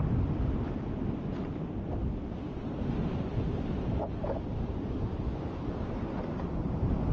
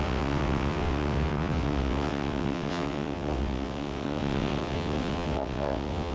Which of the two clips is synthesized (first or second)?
second